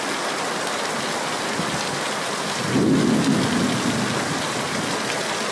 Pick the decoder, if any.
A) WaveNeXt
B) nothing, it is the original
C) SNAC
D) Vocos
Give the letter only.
B